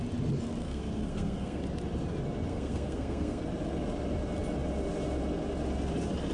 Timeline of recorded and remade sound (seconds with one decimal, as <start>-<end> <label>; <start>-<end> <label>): 0.0-0.6 recorded; 0.6-1.6 remade; 1.6-2.5 recorded; 2.5-3.4 remade; 3.4-6.3 recorded